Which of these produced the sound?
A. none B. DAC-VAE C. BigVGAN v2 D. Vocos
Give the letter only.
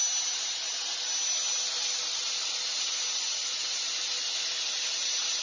A